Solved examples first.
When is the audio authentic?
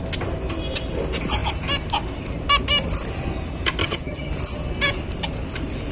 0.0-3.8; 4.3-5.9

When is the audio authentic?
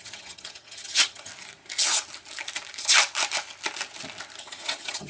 1.3-4.4